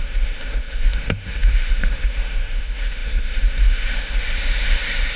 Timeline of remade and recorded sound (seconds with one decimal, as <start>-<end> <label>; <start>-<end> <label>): 0.0-5.2 remade

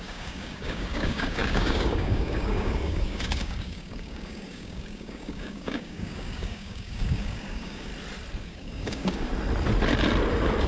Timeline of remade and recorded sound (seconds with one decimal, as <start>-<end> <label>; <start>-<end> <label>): 0.0-7.9 remade; 7.9-8.4 recorded; 8.4-9.3 remade; 9.3-10.7 recorded

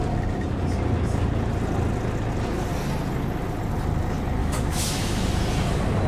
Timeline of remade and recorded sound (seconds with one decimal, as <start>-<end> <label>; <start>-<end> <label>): 0.0-4.4 recorded; 4.4-5.3 remade; 5.3-6.1 recorded

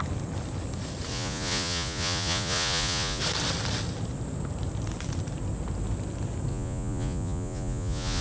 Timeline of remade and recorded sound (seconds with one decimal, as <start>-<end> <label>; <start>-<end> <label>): 0.0-1.1 recorded; 1.1-3.2 remade; 3.2-6.5 recorded; 6.5-8.2 remade

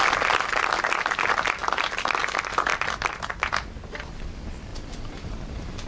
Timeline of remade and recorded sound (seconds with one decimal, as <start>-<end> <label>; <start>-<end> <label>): 0.0-1.6 recorded; 1.6-2.2 remade; 2.2-2.7 recorded; 2.7-3.3 remade; 3.3-4.7 recorded; 4.7-5.5 remade; 5.5-5.9 recorded